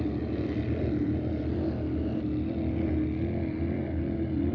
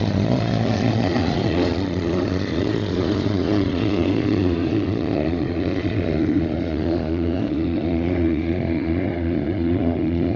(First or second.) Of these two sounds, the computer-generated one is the second